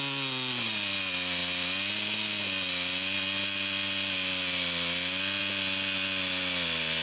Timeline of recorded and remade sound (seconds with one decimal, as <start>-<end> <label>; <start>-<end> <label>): 0.0-7.0 recorded